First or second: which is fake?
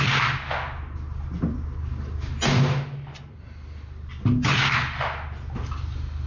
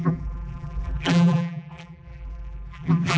second